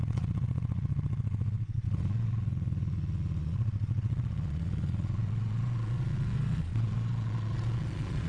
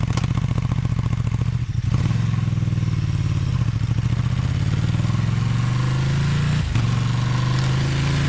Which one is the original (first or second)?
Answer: second